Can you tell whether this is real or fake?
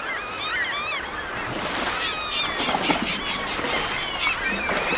real